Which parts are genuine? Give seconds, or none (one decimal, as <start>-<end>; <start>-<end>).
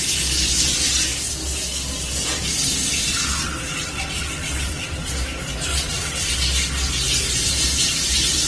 0.0-3.3; 5.1-5.7; 6.3-8.5